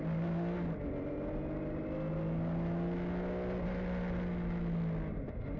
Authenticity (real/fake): real